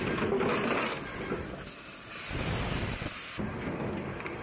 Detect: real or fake real